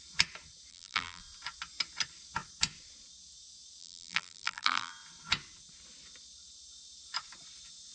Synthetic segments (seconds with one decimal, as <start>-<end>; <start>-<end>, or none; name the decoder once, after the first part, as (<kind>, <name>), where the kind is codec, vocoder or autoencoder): 0.7-1.2 (vocoder, BigVGAN v2); 3.8-4.9